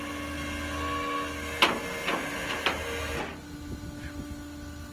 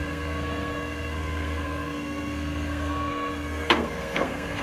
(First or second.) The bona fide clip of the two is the first